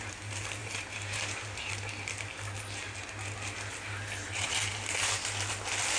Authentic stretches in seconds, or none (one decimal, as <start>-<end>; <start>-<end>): 0.0-0.6; 1.7-6.0